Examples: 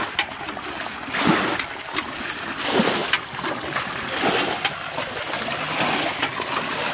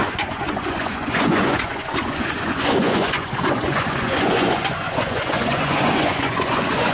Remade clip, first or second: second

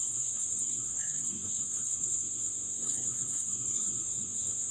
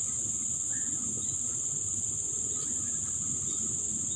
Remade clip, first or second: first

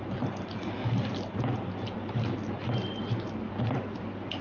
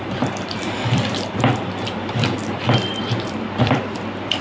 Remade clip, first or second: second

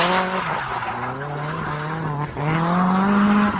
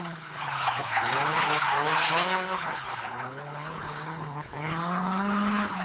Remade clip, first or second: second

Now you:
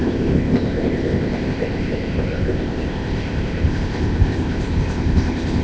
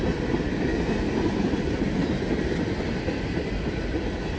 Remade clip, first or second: first